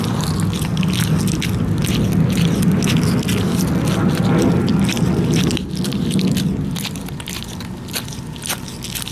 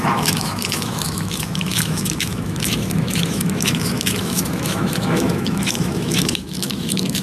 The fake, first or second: second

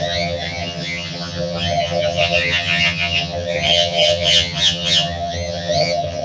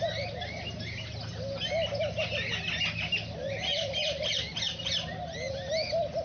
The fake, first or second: first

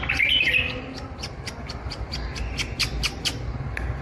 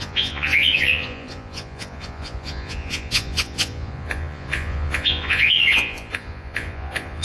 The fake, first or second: second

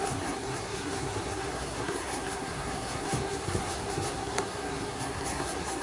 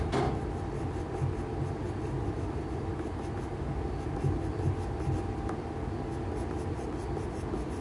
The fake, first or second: first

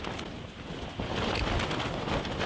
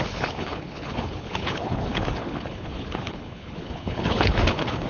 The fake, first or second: second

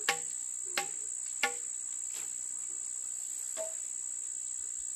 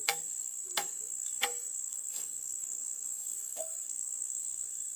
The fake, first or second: second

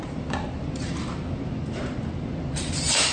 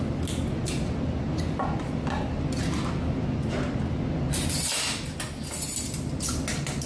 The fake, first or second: first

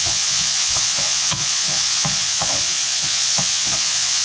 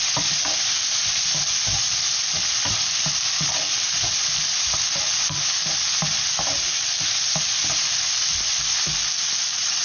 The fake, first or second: first